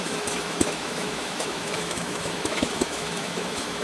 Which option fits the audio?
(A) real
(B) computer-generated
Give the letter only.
B